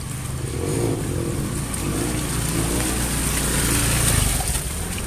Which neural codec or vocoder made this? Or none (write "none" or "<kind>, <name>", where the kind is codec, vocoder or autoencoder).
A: none